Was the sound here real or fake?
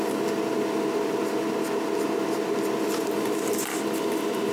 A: real